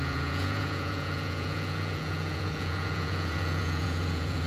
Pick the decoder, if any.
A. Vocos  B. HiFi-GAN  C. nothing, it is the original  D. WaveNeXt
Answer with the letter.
A